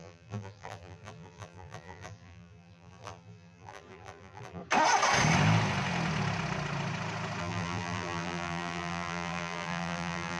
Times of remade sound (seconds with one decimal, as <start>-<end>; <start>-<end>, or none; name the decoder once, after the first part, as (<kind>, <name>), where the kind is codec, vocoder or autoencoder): 0.0-4.6 (vocoder, BigVGAN v2); 7.4-10.4